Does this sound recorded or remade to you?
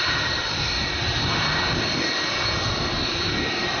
recorded